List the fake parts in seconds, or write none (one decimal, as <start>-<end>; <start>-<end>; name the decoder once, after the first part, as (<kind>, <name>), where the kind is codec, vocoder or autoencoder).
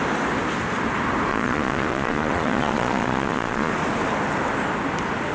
1.3-3.7 (vocoder, Vocos)